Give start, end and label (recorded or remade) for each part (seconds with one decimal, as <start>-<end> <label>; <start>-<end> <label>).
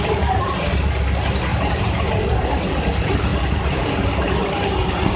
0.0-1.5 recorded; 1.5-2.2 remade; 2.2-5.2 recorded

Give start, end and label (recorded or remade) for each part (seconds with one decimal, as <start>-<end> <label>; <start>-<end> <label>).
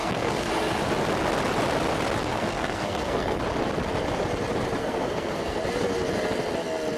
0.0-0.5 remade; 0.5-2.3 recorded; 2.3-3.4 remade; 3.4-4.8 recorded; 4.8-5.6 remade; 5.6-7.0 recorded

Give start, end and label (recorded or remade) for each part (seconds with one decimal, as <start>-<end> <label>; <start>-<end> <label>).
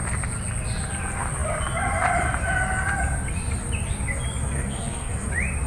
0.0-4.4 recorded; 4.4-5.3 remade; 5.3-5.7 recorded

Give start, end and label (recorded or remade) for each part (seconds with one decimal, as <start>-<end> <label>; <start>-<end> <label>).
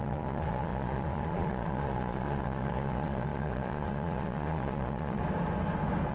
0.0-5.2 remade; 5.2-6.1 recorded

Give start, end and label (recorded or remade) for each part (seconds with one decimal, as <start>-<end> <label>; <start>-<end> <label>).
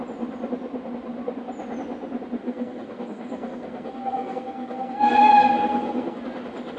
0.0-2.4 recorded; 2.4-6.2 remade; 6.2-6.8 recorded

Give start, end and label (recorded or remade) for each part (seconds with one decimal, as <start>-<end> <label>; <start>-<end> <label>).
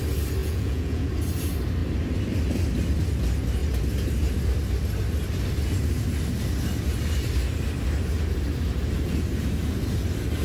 0.0-0.4 recorded; 0.4-1.1 remade; 1.1-10.4 recorded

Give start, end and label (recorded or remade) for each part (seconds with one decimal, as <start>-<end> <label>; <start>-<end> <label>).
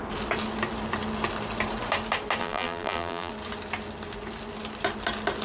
0.0-2.4 recorded; 2.4-3.3 remade; 3.3-5.4 recorded